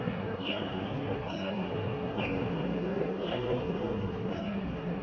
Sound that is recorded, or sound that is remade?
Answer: remade